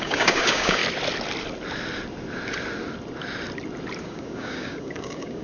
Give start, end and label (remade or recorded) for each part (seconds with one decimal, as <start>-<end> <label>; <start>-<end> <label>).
0.0-0.8 remade; 0.8-4.0 recorded; 4.0-5.4 remade